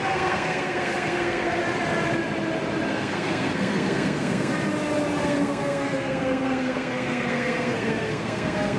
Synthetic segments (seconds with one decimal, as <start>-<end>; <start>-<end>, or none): 0.0-1.6; 2.9-4.5; 5.2-8.8